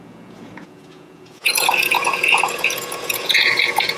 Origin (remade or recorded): remade